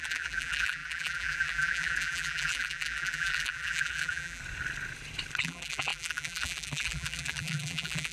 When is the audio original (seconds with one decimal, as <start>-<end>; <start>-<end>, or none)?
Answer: 4.4-5.4